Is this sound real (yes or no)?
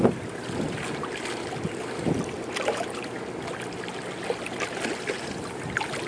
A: yes